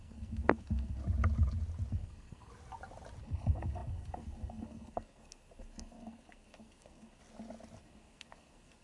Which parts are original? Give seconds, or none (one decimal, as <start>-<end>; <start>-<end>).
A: 1.0-1.9; 2.5-3.2; 7.2-7.8